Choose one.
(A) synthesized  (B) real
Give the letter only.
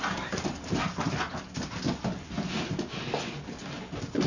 B